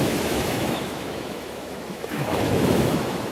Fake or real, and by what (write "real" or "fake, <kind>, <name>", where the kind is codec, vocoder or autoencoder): fake, autoencoder, DAC-VAE